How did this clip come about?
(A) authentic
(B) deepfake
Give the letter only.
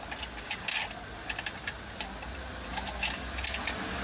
A